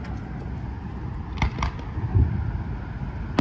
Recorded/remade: recorded